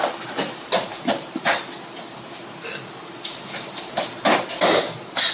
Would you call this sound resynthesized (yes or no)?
no